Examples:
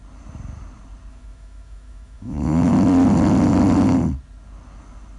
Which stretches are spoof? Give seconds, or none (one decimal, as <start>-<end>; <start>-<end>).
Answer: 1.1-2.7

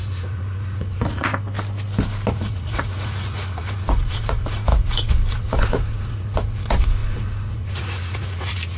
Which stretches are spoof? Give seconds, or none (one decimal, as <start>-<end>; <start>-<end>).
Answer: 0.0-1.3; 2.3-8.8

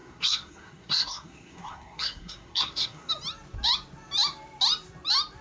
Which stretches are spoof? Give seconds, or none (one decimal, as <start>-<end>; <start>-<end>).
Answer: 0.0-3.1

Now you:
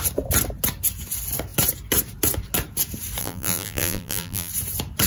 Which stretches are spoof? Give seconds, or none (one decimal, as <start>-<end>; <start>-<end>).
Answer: 3.2-4.5

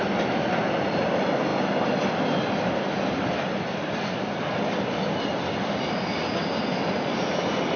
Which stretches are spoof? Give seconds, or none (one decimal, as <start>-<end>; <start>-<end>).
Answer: none